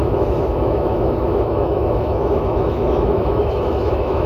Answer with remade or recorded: remade